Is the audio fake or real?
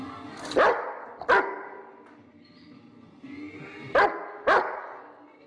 real